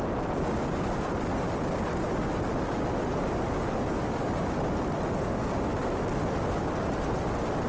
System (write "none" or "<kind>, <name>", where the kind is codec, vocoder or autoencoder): none